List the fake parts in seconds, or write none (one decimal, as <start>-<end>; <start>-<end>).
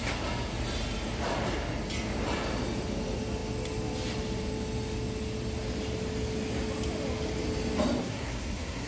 8.0-8.9